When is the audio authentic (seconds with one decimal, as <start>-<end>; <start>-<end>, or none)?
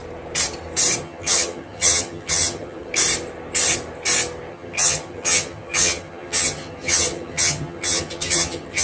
0.0-1.0; 2.9-4.5